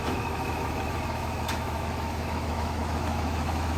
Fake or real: fake